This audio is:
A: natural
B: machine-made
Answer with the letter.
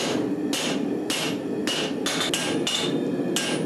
A